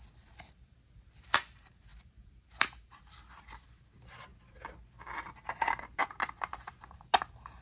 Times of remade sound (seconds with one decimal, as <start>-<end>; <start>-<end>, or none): 1.9-3.3; 6.0-6.7